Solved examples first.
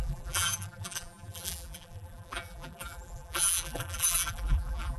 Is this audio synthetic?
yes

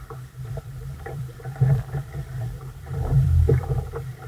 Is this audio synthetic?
yes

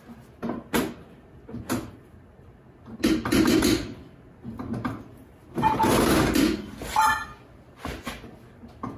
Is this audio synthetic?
no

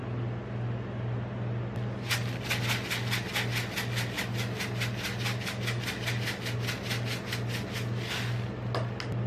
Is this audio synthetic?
no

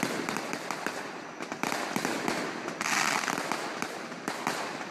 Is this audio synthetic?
no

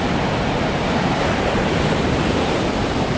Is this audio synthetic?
yes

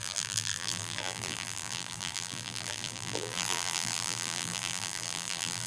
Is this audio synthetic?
yes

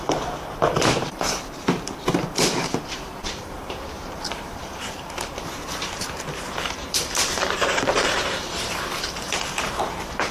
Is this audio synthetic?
yes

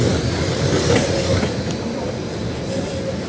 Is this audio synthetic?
no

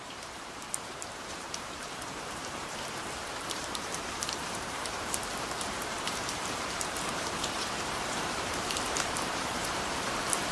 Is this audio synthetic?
yes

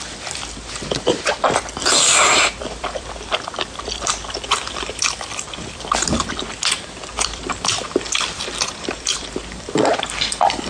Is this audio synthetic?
yes